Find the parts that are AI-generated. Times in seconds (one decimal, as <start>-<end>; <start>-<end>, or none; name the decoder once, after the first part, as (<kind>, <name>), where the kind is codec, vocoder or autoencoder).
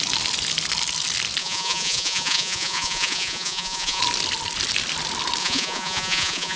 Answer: 1.4-4.0 (vocoder, Vocos); 5.4-6.6